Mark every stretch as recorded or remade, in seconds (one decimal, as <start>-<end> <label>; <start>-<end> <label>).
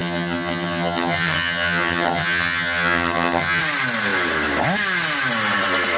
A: 0.0-3.6 remade; 3.6-6.0 recorded